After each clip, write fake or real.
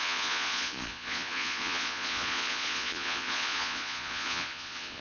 fake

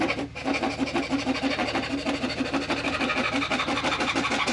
real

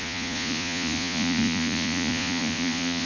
fake